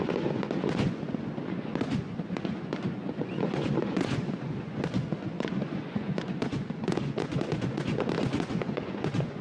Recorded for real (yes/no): no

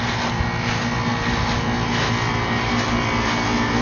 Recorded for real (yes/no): yes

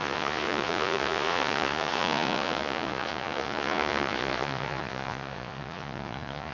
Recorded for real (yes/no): no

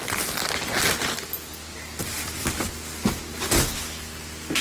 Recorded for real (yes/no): yes